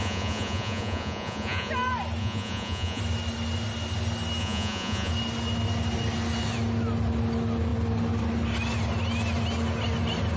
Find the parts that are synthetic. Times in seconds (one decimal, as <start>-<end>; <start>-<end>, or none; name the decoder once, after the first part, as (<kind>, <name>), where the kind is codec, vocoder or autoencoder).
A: 0.0-1.7 (vocoder, Vocos); 2.2-3.0; 4.4-5.1